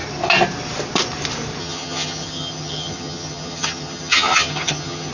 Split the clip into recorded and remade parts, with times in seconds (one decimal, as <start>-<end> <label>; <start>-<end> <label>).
0.0-1.6 recorded; 1.6-5.1 remade